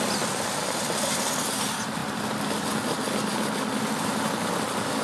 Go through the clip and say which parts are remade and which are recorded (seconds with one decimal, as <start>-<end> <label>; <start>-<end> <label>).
0.0-5.0 recorded